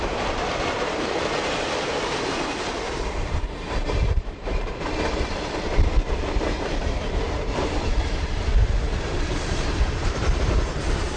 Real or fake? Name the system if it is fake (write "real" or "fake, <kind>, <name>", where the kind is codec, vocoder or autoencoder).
fake, vocoder, BigVGAN v2